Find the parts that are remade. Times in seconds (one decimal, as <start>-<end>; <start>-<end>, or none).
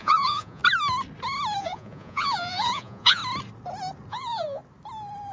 0.0-0.6; 1.6-3.2; 4.1-4.6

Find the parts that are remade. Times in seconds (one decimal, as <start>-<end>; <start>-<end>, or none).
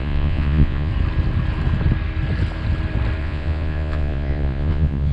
0.0-0.9; 3.2-5.1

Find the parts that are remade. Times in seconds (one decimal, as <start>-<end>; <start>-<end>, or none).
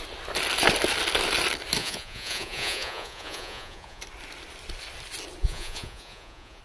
1.8-4.0; 5.4-6.6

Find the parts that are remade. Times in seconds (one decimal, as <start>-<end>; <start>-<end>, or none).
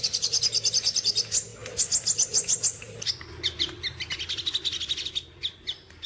none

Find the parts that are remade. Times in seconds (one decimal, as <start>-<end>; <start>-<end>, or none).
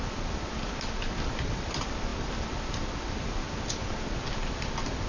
none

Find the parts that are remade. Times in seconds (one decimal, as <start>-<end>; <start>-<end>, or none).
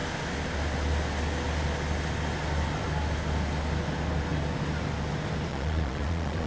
5.5-6.5